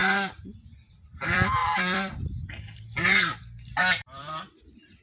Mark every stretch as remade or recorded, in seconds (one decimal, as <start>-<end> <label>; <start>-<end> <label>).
0.0-0.9 recorded; 0.9-5.0 remade